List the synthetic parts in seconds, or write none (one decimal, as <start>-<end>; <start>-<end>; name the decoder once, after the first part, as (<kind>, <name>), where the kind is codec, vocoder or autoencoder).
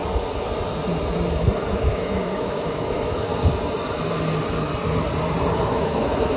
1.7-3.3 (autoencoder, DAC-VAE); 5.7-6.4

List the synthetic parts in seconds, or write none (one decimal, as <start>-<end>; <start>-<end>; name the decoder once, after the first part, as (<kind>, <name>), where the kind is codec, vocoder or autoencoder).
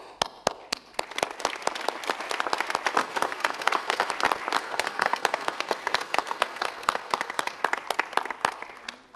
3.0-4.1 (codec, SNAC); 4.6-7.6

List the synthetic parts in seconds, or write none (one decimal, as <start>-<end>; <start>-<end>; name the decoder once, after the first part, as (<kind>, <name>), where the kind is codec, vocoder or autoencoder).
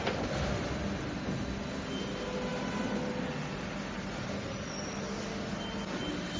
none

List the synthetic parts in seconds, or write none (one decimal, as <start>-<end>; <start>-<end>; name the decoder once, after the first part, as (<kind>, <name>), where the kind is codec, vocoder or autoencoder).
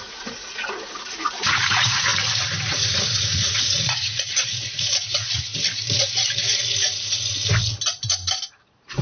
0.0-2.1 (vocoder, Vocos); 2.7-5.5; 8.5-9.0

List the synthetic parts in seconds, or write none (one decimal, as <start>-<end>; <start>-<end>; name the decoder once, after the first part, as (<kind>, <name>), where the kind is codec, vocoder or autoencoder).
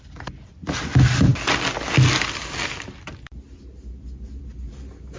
none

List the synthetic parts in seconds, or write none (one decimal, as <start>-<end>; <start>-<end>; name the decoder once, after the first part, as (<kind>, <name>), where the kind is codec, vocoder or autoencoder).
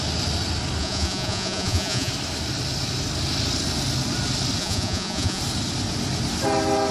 0.8-2.1 (vocoder, Vocos); 4.6-5.4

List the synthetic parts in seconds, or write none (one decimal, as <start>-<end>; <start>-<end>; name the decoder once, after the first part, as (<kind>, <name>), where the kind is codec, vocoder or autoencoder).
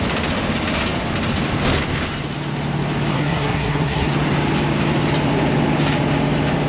3.1-4.1 (codec, SNAC)